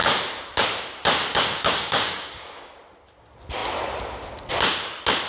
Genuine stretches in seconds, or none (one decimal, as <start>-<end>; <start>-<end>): 0.0-1.3; 2.8-5.3